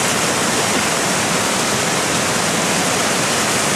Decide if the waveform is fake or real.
real